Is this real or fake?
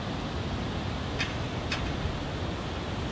real